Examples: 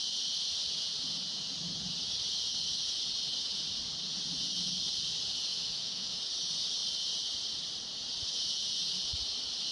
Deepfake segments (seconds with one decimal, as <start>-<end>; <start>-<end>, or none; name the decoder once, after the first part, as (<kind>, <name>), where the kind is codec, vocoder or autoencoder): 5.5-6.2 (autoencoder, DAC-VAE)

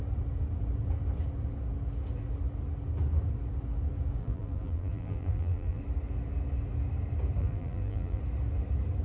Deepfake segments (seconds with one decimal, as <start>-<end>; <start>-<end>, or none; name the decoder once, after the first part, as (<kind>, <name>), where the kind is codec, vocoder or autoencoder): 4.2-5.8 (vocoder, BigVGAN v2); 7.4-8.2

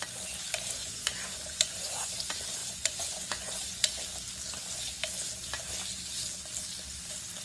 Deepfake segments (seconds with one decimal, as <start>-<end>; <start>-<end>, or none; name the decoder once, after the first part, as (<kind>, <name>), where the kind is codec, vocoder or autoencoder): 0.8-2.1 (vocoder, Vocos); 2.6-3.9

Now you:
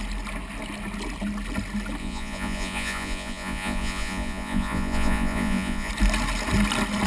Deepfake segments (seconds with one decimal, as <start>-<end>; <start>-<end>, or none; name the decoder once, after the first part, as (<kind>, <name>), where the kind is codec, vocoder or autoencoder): 2.0-5.9 (vocoder, Vocos)